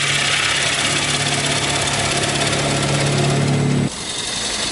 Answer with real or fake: real